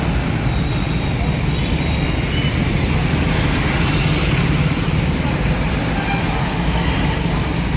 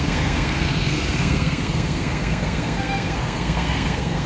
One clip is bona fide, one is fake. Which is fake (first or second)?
second